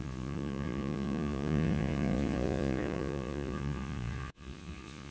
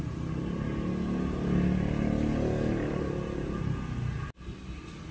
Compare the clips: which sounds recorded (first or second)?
second